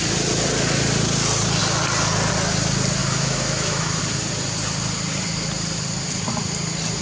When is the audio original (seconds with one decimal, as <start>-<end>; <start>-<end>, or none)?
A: 0.0-3.0; 4.0-7.0